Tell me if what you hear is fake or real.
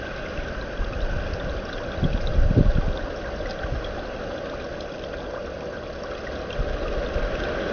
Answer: real